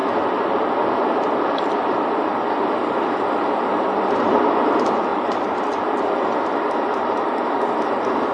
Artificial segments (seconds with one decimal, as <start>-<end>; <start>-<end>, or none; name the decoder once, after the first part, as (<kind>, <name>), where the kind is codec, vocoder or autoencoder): none